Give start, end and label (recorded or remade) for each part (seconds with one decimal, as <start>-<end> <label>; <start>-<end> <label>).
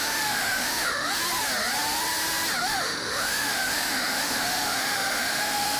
0.0-1.2 remade; 1.2-2.6 recorded; 2.6-5.8 remade